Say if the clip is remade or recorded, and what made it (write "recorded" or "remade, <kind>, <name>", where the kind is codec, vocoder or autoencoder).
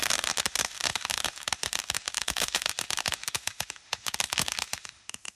remade, autoencoder, DAC-VAE